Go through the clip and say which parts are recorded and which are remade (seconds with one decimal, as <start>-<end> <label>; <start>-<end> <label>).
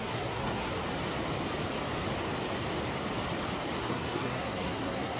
0.0-0.7 remade; 0.7-3.8 recorded; 3.8-5.2 remade